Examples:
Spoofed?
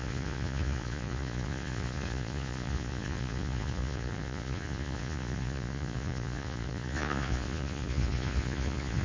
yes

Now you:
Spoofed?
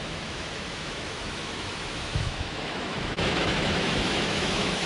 yes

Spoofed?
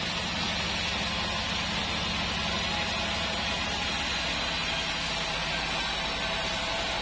no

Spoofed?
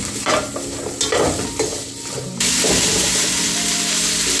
no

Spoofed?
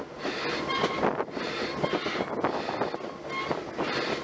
no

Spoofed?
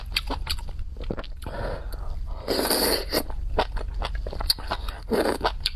no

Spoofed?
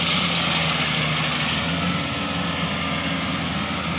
no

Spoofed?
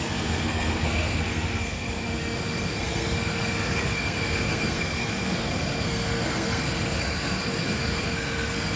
yes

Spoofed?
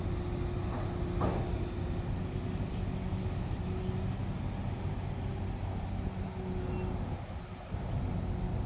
no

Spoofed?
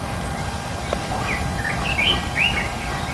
no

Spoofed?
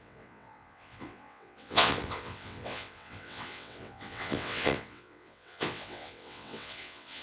yes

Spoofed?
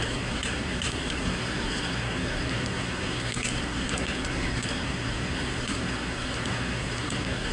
yes